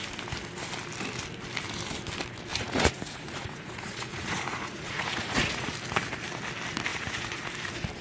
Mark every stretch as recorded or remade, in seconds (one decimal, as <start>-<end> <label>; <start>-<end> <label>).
0.0-2.5 recorded; 2.5-5.7 remade; 5.7-6.9 recorded; 6.9-7.5 remade; 7.5-8.0 recorded